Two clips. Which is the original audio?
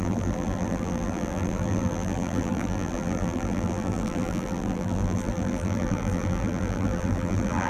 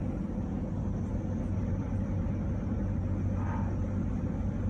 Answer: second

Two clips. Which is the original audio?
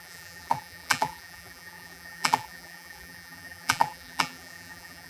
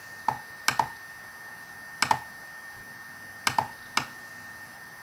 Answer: second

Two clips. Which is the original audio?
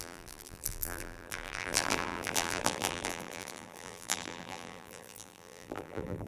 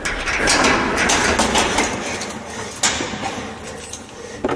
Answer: second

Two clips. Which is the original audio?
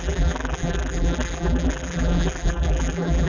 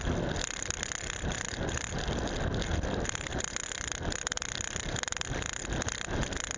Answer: second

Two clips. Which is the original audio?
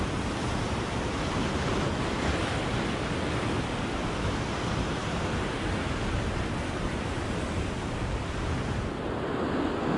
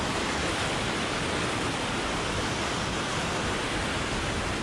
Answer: first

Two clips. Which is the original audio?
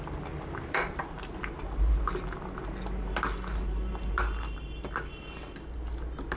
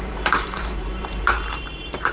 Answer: first